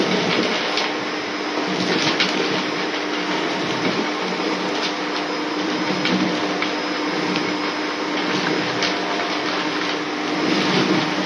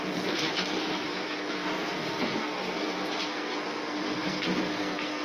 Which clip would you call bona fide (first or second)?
first